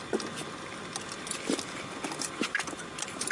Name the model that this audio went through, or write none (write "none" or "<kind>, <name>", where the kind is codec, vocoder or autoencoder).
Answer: none